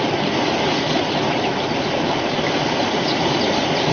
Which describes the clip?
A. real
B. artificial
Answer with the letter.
A